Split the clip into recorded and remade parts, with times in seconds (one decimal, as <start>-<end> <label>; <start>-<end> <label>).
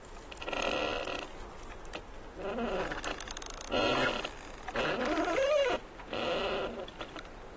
0.0-6.1 recorded; 6.1-7.6 remade